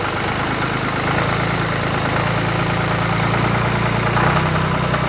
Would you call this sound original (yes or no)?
yes